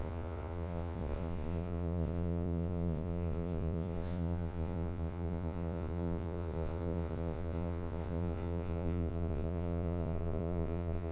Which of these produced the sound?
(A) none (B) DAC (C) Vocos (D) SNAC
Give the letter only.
C